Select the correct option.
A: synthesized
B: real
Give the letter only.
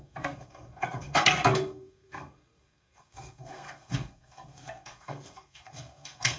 A